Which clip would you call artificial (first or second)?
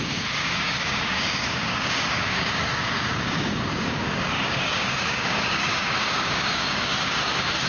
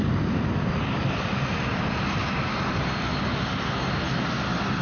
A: first